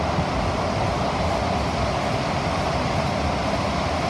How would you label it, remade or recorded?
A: recorded